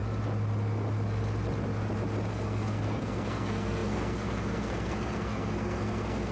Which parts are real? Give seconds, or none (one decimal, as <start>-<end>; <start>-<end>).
0.0-2.3